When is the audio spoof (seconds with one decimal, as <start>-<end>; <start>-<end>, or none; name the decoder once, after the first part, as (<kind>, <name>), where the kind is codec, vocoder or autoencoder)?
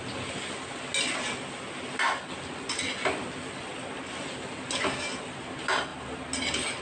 none